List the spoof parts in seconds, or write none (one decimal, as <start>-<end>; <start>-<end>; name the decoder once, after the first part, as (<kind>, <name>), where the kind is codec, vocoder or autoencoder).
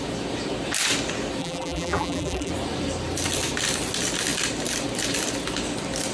1.4-2.5 (vocoder, BigVGAN v2)